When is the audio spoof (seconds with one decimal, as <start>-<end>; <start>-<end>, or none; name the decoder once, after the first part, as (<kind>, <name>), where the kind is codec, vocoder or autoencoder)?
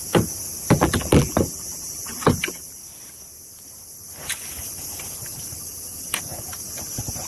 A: 0.7-2.8 (vocoder, BigVGAN v2)